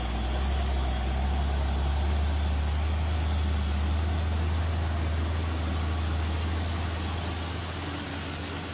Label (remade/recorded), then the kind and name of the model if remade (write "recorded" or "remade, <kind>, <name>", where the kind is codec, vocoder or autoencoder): recorded